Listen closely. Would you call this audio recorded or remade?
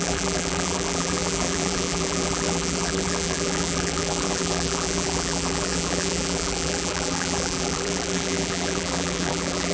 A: remade